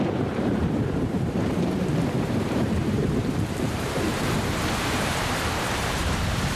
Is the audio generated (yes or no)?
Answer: yes